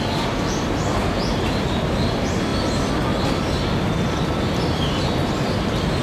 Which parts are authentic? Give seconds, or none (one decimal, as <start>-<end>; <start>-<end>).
0.0-6.0